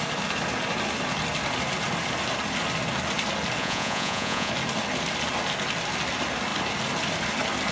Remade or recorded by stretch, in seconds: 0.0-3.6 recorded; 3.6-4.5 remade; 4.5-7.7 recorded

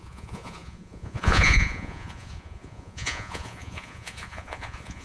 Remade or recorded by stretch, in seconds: 0.0-5.0 remade

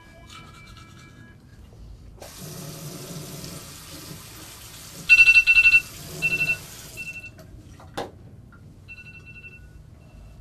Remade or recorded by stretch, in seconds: 0.0-10.4 recorded

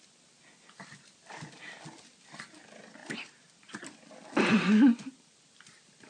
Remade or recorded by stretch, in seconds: 0.0-6.1 recorded

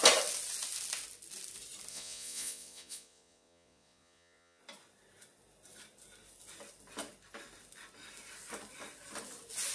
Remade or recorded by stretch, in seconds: 0.0-1.9 recorded; 1.9-4.6 remade; 4.6-9.7 recorded

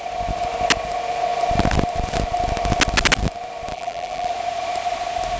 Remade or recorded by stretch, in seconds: 0.0-3.7 recorded; 3.7-4.3 remade; 4.3-5.4 recorded

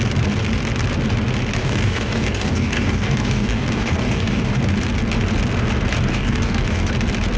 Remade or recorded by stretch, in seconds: 0.0-1.6 recorded; 1.6-4.6 remade; 4.6-6.1 recorded; 6.1-6.9 remade; 6.9-7.4 recorded